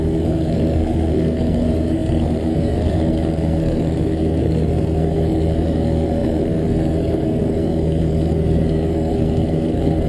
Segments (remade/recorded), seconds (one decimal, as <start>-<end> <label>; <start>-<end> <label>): 0.0-10.1 remade